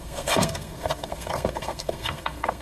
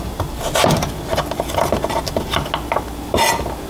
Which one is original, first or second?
second